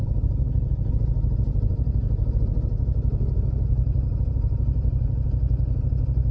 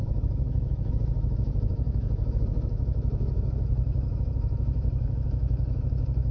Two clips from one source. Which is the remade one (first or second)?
second